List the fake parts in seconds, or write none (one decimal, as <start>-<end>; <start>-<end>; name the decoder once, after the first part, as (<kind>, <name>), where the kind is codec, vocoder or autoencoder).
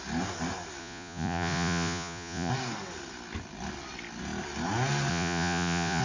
0.8-2.5 (vocoder, Vocos); 5.1-6.0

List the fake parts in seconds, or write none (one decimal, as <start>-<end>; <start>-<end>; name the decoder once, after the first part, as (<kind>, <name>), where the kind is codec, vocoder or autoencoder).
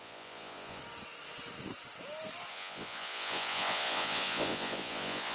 0.0-0.8 (vocoder, Vocos); 2.5-5.3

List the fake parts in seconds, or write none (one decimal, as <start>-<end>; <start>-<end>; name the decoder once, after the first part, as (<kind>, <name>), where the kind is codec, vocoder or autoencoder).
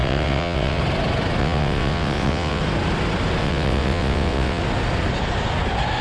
0.0-0.8 (vocoder, WaveNeXt); 1.4-2.6; 3.4-4.6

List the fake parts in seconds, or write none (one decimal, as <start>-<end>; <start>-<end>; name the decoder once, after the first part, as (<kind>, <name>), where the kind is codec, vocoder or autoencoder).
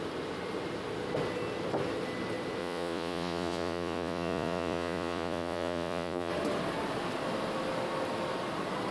2.6-6.3 (vocoder, Vocos)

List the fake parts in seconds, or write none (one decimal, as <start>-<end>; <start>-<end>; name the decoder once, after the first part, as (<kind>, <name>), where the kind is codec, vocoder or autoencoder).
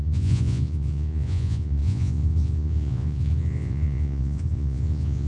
0.0-5.3 (vocoder, Vocos)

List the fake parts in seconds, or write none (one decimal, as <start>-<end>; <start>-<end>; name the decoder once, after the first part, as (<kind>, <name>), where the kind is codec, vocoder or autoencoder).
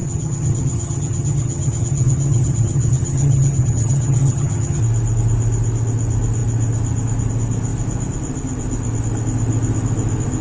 0.0-4.8 (vocoder, HiFi-GAN)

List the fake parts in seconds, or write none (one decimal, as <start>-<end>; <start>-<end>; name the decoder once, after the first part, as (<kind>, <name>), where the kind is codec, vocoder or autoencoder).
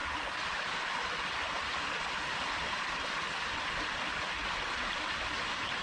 none